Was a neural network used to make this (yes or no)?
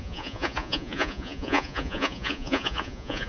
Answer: yes